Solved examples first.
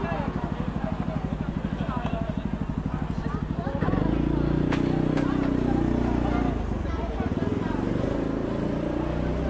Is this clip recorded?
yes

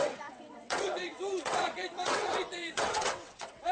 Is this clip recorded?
no